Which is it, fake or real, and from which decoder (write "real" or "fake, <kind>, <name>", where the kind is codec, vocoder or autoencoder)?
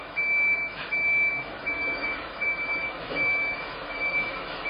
fake, autoencoder, DAC-VAE